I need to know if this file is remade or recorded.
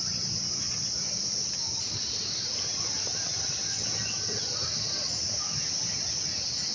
recorded